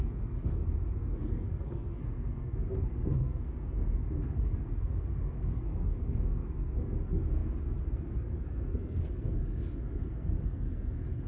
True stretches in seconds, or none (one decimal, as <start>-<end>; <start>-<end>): 0.6-1.1